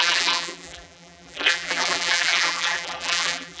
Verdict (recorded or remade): remade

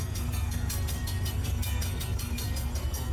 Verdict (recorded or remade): remade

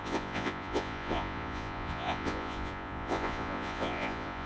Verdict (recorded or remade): remade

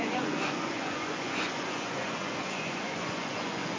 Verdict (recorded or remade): remade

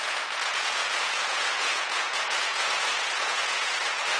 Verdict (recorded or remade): remade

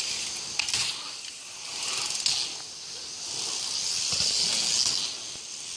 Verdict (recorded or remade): recorded